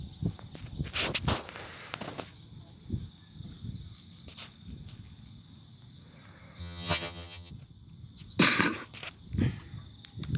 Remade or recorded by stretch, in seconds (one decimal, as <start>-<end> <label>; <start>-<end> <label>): 0.0-6.6 recorded; 6.6-7.5 remade; 7.5-10.4 recorded

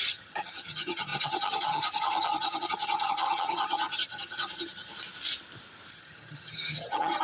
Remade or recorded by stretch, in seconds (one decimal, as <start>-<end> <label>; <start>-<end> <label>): 0.0-4.9 remade; 4.9-5.9 recorded; 5.9-7.2 remade

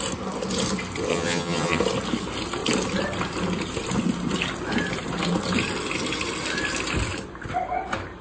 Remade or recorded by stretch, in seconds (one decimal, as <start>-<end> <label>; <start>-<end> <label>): 0.0-1.1 recorded; 1.1-1.8 remade; 1.8-8.2 recorded

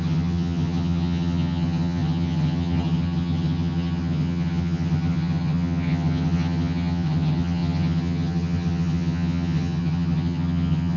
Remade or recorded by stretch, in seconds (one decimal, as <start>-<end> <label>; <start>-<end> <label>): 0.0-11.0 remade

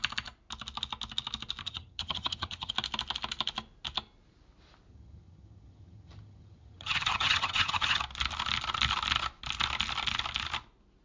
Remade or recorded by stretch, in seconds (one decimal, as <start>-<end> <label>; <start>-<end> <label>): 0.0-1.6 recorded; 1.6-2.7 remade; 2.7-4.9 recorded; 4.9-8.0 remade; 8.0-11.0 recorded

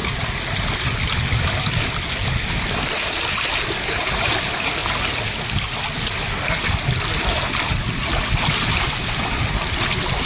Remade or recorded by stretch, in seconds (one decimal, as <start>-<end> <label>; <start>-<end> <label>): 0.0-10.3 recorded

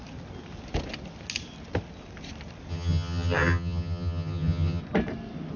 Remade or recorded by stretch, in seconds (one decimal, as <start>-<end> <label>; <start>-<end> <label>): 0.0-2.7 recorded; 2.7-4.8 remade; 4.8-5.6 recorded

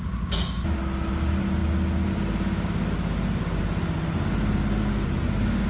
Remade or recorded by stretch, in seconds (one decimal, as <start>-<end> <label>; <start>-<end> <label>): 0.0-5.7 recorded